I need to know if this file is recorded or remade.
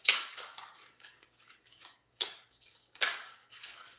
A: remade